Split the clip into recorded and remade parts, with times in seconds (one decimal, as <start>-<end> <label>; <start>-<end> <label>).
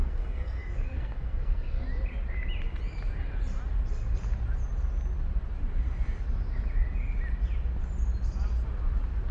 0.0-1.8 remade; 1.8-9.3 recorded